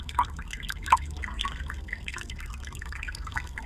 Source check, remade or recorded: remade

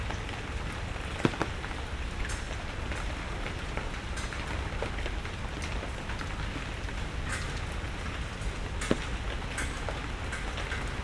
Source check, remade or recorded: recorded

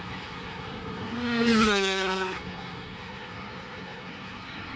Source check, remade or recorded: remade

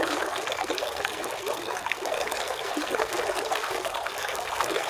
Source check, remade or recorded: remade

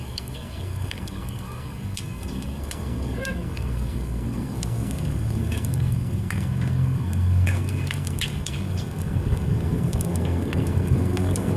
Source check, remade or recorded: remade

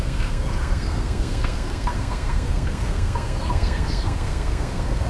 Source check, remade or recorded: remade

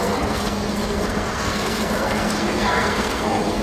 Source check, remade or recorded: remade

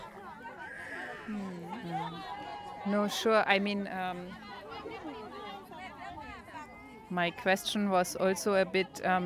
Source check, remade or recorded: recorded